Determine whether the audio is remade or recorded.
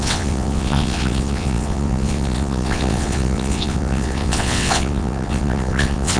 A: remade